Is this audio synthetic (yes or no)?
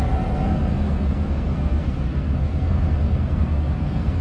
yes